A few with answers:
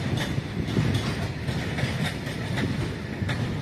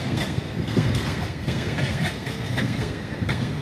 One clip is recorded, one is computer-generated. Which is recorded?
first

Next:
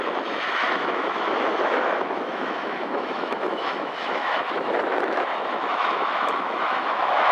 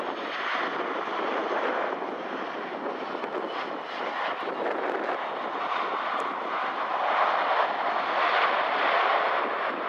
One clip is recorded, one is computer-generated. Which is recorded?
second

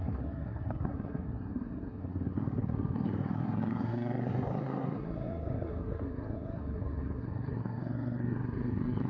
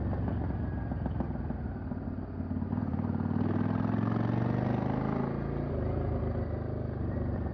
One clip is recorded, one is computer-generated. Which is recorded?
second